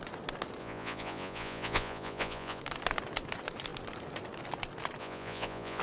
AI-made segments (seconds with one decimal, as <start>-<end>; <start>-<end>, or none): 0.6-2.6; 5.0-5.8

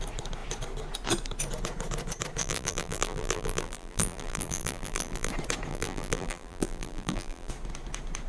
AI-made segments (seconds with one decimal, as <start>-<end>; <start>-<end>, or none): 2.4-5.3; 5.7-7.5